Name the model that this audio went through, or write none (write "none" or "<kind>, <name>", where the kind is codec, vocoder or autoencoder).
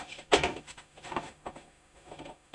autoencoder, DAC-VAE